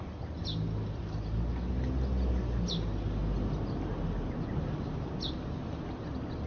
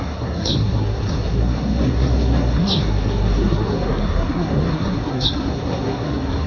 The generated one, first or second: second